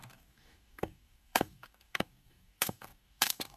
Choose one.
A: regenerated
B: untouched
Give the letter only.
A